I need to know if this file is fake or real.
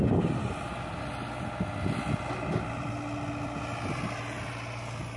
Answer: real